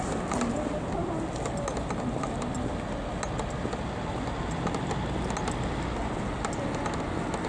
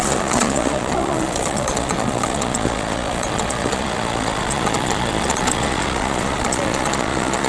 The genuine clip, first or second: first